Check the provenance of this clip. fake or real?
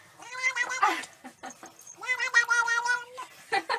real